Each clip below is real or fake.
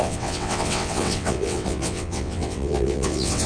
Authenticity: fake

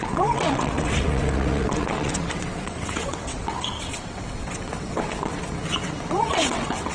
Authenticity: fake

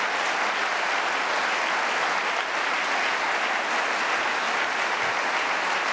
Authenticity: real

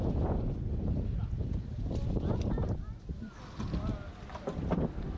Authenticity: real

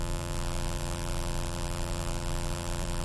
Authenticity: fake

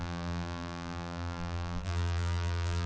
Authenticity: fake